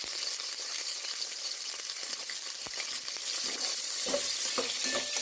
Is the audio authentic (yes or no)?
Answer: yes